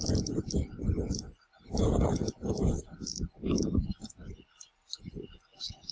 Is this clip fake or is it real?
real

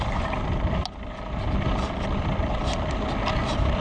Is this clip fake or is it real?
real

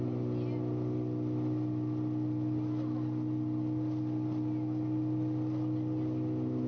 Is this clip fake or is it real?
real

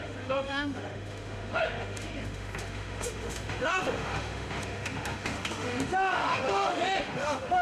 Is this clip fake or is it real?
fake